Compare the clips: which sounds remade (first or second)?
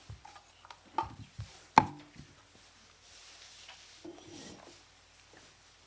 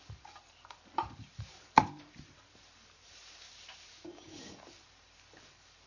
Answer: second